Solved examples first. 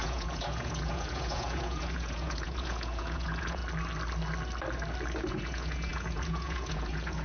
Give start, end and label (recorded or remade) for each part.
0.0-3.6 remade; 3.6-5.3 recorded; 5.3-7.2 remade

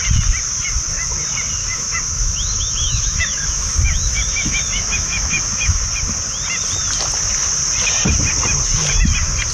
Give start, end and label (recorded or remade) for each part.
0.0-1.6 recorded; 1.6-5.8 remade; 5.8-9.5 recorded

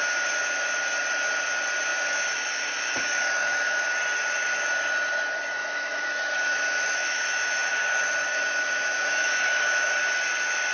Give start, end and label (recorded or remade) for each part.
0.0-1.9 recorded; 1.9-3.8 remade; 3.8-5.6 recorded; 5.6-7.7 remade; 7.7-8.3 recorded; 8.3-9.9 remade; 9.9-10.7 recorded

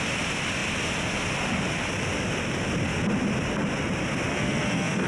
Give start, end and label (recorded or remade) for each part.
0.0-4.3 recorded; 4.3-5.1 remade